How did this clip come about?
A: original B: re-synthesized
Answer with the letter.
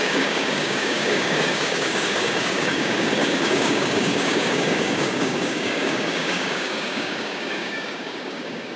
B